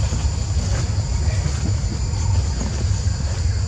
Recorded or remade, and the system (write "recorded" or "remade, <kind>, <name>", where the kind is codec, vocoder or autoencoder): recorded